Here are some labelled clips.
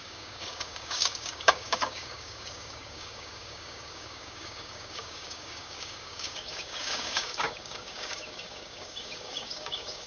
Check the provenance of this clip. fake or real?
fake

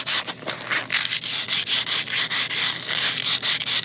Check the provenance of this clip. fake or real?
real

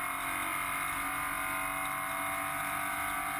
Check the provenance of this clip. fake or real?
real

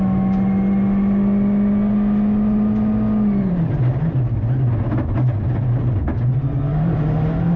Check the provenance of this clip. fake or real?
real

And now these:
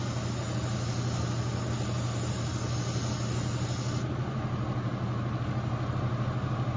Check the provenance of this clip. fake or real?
real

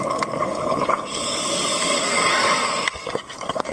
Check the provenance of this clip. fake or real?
fake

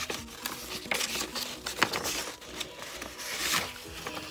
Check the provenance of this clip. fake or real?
real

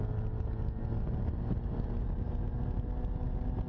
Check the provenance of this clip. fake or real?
real